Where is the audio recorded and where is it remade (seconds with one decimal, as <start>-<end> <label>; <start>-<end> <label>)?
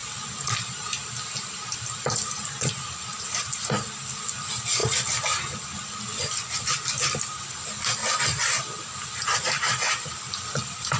0.0-11.0 recorded